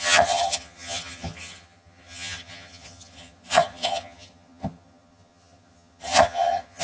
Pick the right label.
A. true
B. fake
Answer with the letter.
B